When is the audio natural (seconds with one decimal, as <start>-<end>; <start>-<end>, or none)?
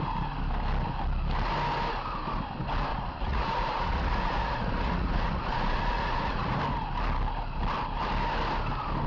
0.0-2.9; 6.6-9.1